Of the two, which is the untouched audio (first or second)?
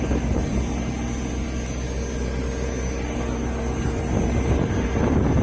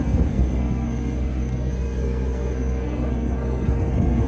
first